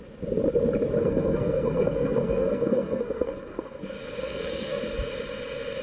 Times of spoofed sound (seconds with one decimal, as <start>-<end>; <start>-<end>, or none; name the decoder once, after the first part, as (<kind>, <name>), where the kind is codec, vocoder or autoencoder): 1.0-3.8 (codec, SNAC); 4.2-4.8